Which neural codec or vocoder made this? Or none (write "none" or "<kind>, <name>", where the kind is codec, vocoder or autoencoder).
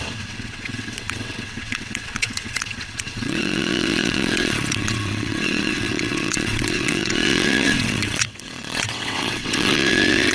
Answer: vocoder, WaveNeXt